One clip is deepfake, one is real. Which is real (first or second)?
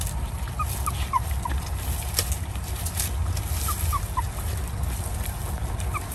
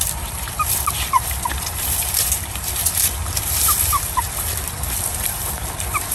first